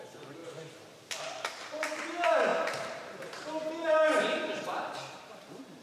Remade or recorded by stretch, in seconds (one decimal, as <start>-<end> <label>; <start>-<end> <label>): 0.0-0.4 remade; 0.4-1.2 recorded; 1.2-5.8 remade